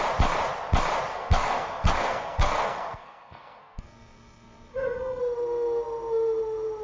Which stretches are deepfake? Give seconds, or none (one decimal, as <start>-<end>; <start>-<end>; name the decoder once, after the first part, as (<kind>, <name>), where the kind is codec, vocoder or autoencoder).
1.1-5.2 (codec, SNAC)